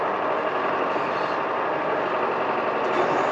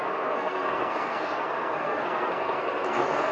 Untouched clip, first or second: first